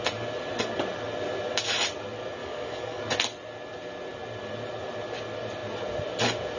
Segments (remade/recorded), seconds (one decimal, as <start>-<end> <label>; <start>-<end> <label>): 0.0-2.4 recorded; 2.4-3.0 remade; 3.0-6.6 recorded